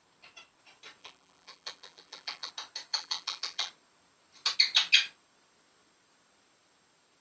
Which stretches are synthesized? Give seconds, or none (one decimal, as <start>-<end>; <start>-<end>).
1.0-2.5; 2.9-3.7